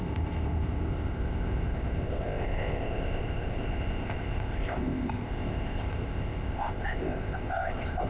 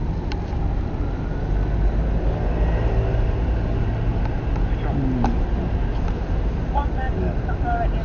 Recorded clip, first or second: second